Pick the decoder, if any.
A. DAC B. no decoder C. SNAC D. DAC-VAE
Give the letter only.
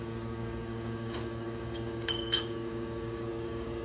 A